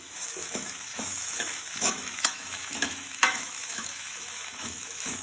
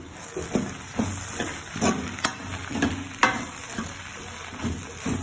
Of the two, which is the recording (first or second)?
second